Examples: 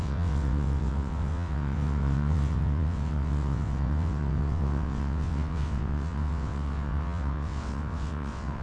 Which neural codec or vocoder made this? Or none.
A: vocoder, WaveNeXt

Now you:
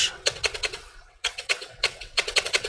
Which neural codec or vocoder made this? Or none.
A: vocoder, WaveNeXt